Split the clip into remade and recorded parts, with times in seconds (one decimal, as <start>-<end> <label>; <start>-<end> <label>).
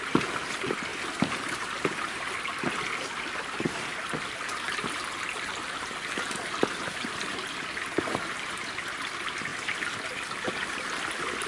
0.0-11.5 recorded